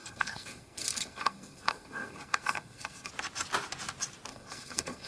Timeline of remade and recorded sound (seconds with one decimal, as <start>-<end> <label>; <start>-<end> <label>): 0.0-3.1 remade; 3.1-4.3 recorded; 4.3-5.1 remade